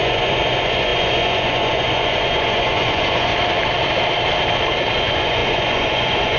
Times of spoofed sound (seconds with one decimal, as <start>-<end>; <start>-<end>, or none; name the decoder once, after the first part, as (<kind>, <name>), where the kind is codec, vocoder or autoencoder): 0.0-3.3 (vocoder, Vocos); 5.0-6.4